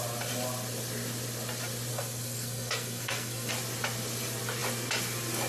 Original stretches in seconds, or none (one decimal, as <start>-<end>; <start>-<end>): 0.0-1.9; 3.5-5.5